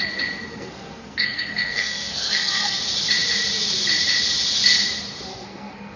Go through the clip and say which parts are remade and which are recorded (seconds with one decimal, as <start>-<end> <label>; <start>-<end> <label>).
0.0-0.5 recorded; 0.5-2.8 remade; 2.8-5.3 recorded; 5.3-6.0 remade